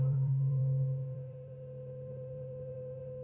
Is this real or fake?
fake